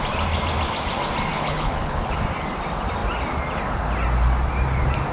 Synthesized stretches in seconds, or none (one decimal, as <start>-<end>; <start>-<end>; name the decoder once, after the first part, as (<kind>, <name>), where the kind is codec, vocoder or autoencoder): 1.3-2.2 (codec, HILCodec)